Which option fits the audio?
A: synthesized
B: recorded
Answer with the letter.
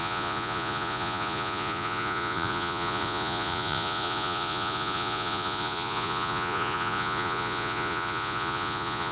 A